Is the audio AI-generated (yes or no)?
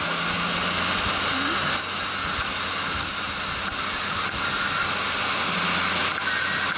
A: no